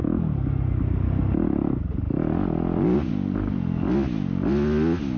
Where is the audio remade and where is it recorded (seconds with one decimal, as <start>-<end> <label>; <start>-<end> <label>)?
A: 0.0-5.2 recorded